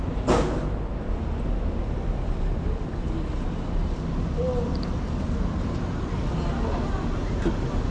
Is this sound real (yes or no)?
yes